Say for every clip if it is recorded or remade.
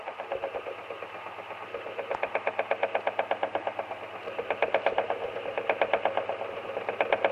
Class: recorded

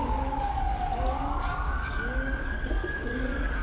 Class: remade